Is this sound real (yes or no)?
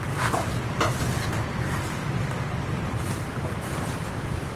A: no